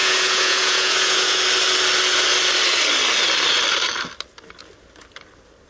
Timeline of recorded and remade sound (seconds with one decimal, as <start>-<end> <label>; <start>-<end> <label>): 0.0-1.4 remade; 1.4-5.7 recorded